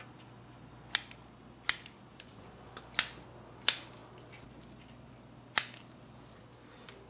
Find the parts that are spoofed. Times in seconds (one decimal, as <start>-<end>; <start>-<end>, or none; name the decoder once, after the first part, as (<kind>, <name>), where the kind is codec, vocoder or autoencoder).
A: 2.1-2.7 (vocoder, Vocos)

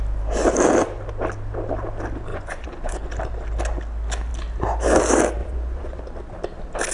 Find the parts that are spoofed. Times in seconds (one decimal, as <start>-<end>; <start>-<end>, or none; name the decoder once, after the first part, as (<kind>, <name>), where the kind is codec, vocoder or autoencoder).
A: 2.3-3.0 (vocoder, Vocos); 5.4-6.0

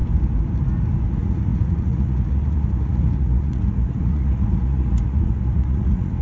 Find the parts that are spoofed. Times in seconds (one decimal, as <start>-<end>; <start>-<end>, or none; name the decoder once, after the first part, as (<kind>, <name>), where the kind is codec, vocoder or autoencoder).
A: 1.1-6.2 (vocoder, Vocos)

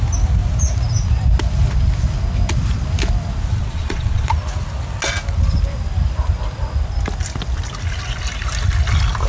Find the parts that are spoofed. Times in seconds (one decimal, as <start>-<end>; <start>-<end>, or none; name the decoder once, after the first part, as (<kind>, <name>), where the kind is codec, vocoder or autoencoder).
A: 3.5-4.3 (vocoder, Vocos)